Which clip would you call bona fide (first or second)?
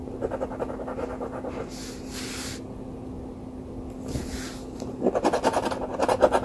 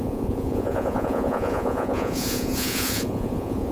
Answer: first